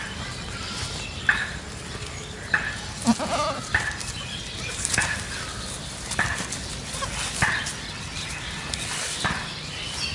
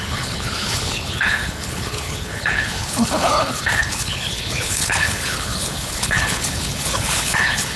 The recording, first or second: first